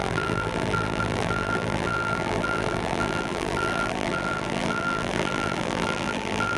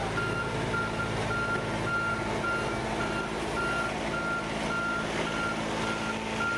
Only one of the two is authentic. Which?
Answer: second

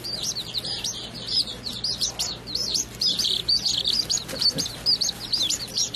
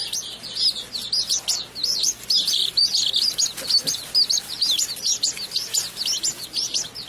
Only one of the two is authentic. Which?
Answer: second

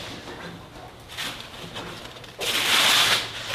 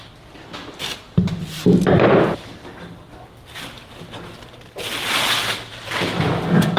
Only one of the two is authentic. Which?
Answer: first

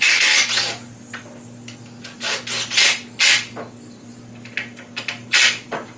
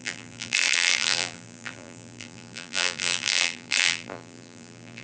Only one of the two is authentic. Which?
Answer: first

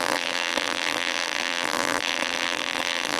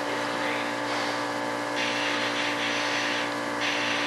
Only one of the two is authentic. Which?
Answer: second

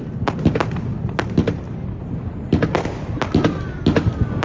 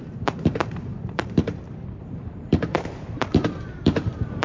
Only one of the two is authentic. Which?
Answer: first